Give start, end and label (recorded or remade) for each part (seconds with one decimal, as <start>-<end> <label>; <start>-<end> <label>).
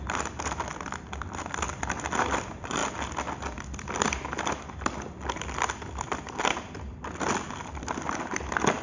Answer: 0.0-8.8 recorded